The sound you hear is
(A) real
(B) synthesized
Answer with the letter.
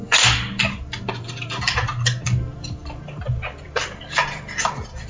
B